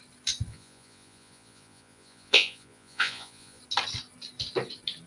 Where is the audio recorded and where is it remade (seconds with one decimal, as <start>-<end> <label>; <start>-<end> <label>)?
0.0-0.5 recorded; 0.5-3.6 remade; 3.6-5.1 recorded